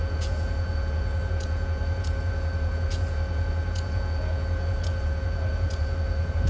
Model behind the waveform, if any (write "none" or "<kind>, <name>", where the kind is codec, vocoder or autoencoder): vocoder, Vocos